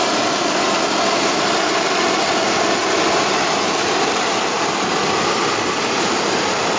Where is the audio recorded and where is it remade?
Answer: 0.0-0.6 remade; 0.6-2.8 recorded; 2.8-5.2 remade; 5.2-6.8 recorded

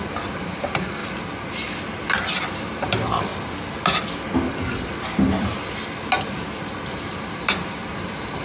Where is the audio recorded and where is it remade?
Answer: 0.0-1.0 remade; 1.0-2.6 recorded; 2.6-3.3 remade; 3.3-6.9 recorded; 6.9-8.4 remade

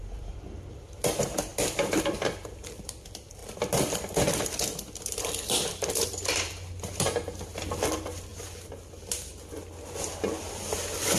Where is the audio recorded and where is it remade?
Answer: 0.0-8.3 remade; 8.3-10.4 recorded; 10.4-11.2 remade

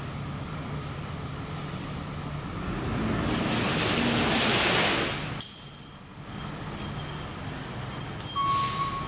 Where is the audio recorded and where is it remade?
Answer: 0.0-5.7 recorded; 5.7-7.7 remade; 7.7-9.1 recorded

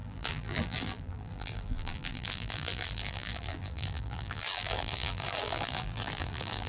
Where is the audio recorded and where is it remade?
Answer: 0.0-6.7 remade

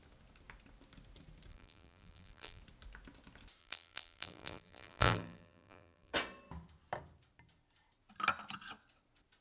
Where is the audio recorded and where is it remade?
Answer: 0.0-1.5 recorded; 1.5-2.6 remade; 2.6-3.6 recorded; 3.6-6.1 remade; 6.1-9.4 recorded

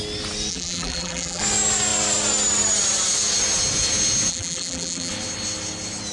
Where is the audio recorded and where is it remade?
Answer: 0.0-0.5 recorded; 0.5-1.4 remade; 1.4-4.3 recorded; 4.3-5.1 remade; 5.1-6.1 recorded